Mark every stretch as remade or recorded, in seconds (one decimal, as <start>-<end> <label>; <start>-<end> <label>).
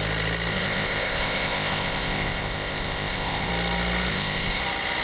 0.0-0.5 recorded; 0.5-3.5 remade; 3.5-4.1 recorded; 4.1-4.6 remade; 4.6-5.0 recorded